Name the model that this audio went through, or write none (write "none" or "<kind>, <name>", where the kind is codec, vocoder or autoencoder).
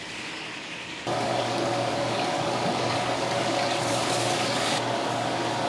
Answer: codec, DAC